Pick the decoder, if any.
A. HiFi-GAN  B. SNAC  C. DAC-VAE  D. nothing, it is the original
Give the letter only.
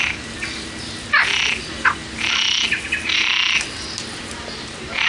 D